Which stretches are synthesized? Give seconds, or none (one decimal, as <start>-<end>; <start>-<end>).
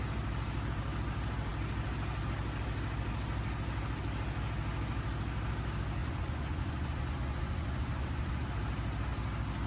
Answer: 6.0-8.5